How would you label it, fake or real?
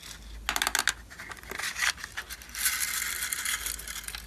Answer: real